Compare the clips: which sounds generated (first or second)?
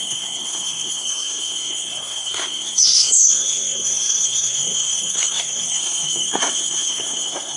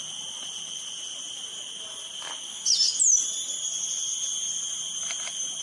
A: first